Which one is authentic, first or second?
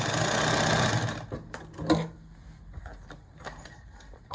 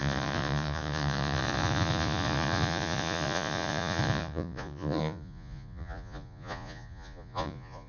first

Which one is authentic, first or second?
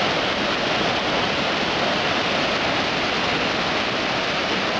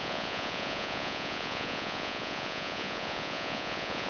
first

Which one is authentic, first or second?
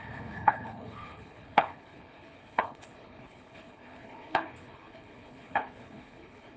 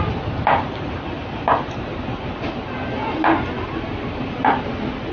second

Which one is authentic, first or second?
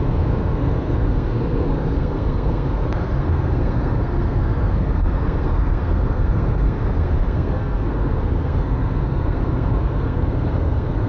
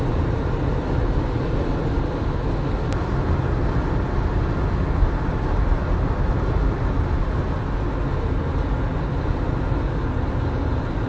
second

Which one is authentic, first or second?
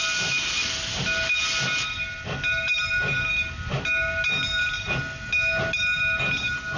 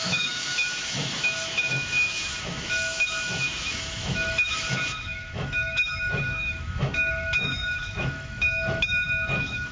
first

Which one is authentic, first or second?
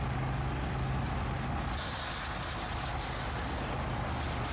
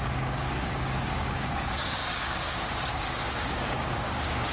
first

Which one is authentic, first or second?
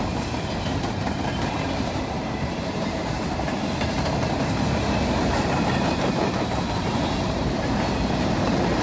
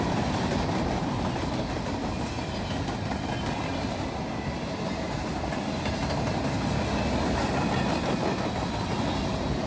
second